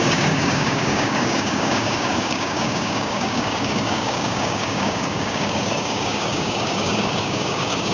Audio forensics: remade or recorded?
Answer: remade